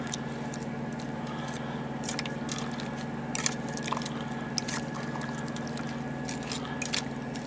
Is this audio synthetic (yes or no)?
no